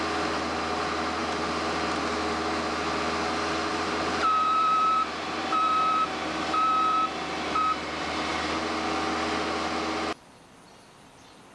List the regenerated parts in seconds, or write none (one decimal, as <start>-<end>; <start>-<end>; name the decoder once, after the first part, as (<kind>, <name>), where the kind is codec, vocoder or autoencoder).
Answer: 3.7-8.3 (vocoder, BigVGAN v2)